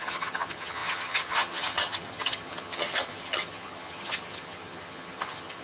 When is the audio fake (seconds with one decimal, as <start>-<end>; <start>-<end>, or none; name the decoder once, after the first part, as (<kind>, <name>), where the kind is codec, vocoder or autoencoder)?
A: 0.0-5.6 (vocoder, HiFi-GAN)